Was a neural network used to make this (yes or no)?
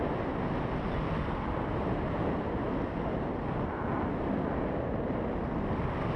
no